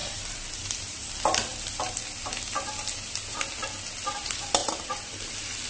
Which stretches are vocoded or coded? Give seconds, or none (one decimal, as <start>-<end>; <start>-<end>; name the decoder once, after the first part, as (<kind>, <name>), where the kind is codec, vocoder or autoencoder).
0.0-1.1 (vocoder, BigVGAN v2); 4.6-5.3

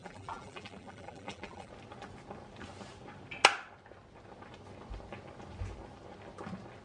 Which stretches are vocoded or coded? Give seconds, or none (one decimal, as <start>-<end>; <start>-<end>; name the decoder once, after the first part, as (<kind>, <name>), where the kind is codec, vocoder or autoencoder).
0.0-1.7 (vocoder, BigVGAN v2)

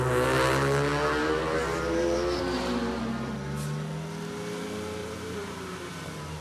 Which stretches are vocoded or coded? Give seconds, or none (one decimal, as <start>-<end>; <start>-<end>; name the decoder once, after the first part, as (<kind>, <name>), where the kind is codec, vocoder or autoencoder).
1.2-2.4 (vocoder, BigVGAN v2); 5.0-5.9

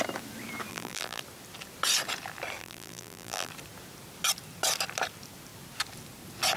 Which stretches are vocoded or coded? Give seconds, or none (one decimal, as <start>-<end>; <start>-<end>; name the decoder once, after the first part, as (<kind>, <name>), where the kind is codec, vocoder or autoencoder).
0.7-1.2 (vocoder, BigVGAN v2); 2.6-3.5

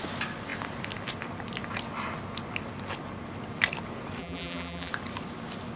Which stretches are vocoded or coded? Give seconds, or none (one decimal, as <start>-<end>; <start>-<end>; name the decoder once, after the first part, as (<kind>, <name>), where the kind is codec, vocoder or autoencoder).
4.2-4.9 (vocoder, BigVGAN v2)